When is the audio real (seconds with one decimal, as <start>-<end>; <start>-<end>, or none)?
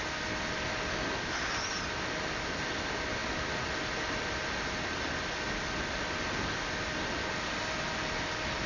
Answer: 0.0-8.7